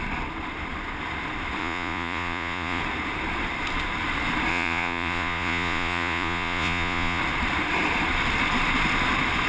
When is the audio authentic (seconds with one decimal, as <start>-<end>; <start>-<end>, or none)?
0.0-1.6; 2.8-4.5; 7.2-9.5